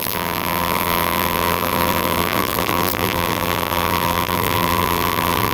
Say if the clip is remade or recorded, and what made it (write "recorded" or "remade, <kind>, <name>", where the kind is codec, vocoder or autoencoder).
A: remade, vocoder, BigVGAN v2